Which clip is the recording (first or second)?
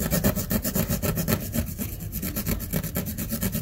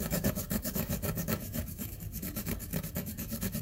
first